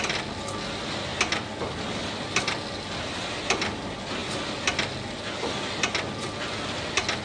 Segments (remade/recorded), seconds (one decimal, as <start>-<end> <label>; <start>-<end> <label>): 0.0-7.2 recorded